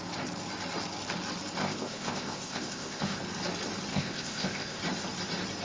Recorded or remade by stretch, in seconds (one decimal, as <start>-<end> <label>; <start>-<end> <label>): 0.0-1.6 recorded; 1.6-3.2 remade; 3.2-3.9 recorded; 3.9-4.8 remade; 4.8-5.6 recorded